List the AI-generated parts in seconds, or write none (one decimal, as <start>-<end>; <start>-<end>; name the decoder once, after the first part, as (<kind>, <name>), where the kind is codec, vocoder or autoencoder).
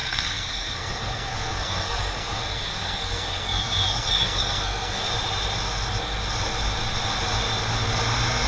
0.0-5.1 (codec, SNAC)